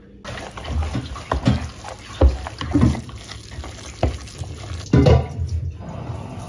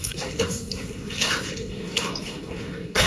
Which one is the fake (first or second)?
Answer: second